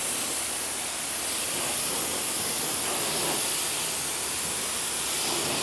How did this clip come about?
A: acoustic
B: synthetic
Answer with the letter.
A